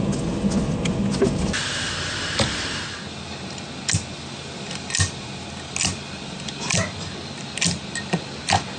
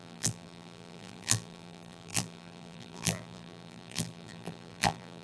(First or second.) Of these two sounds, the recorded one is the first